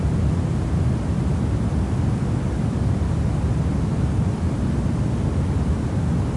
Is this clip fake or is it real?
real